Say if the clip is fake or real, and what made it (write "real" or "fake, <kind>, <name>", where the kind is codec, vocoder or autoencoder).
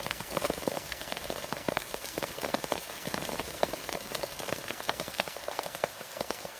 fake, codec, SNAC